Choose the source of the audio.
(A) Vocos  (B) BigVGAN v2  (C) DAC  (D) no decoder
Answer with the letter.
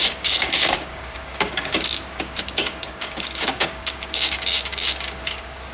C